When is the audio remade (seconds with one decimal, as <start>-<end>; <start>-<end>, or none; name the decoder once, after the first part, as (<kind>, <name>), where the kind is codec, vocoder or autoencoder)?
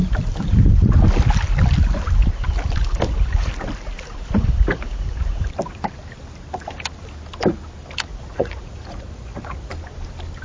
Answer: 8.1-9.7 (vocoder, Vocos)